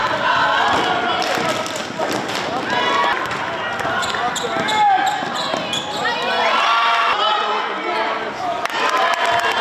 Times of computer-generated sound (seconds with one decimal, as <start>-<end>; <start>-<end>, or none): none